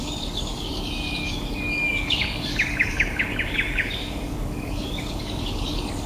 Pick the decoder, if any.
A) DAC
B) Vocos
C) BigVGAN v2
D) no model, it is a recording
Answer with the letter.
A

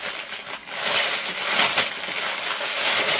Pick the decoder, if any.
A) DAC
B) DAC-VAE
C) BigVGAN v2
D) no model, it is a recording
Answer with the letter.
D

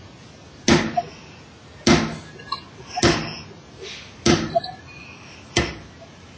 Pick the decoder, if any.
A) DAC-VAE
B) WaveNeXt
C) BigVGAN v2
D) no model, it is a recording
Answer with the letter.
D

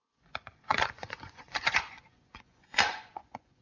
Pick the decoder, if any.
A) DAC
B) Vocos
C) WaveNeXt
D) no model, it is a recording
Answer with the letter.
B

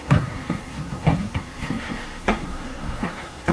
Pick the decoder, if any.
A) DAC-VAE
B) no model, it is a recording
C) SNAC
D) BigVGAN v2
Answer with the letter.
C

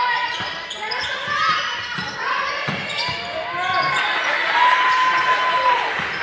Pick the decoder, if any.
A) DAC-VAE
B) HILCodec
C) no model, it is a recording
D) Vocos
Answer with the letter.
C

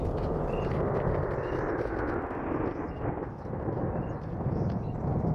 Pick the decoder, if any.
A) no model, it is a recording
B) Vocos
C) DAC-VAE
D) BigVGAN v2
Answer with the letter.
A